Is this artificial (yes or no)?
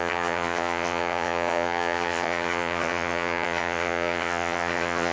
yes